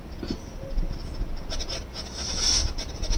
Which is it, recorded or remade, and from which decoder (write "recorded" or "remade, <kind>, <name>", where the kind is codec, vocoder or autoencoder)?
recorded